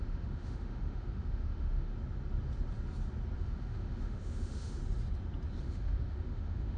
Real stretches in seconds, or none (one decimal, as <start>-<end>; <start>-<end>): 1.9-3.4; 4.8-5.6